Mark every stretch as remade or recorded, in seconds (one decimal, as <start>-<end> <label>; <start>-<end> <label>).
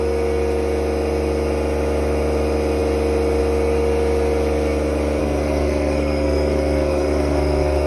0.0-5.2 recorded; 5.2-7.9 remade